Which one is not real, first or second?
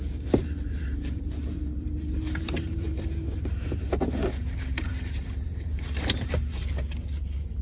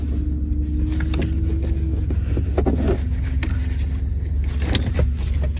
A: first